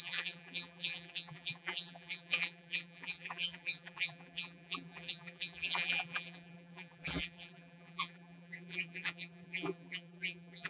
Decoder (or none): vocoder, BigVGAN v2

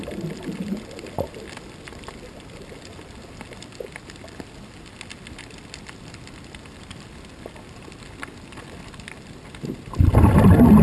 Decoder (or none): none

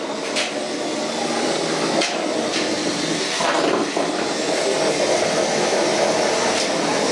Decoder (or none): none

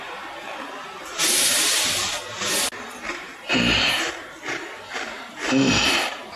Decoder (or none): vocoder, BigVGAN v2